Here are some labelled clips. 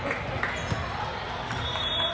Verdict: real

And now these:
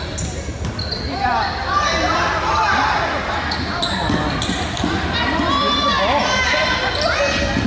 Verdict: real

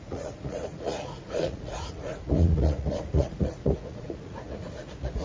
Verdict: fake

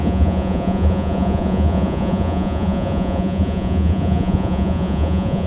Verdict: fake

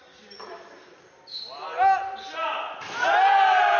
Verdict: real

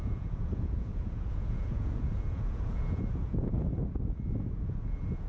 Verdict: fake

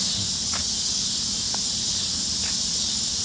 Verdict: real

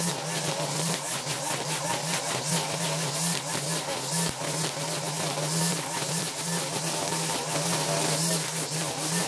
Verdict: real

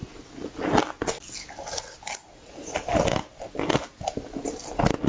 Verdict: real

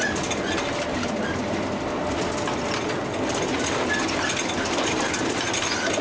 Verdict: real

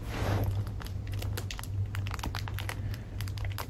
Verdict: real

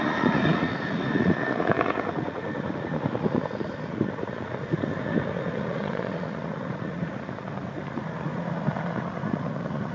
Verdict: fake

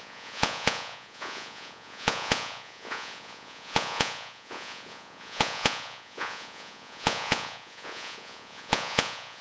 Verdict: fake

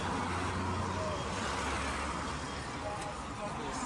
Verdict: real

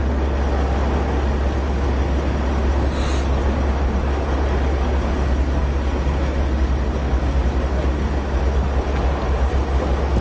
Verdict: real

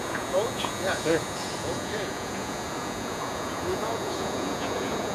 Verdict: fake